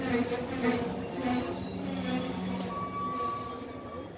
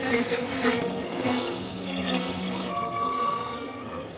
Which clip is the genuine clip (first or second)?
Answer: first